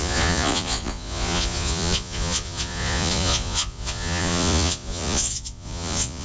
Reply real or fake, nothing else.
fake